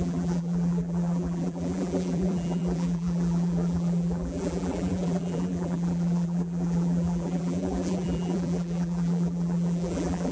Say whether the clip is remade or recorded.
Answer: remade